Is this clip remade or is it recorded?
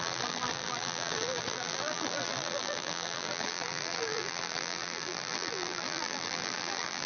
remade